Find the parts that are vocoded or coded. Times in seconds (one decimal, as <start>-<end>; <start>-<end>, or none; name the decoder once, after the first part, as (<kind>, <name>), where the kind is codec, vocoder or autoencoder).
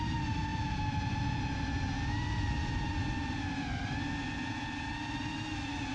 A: none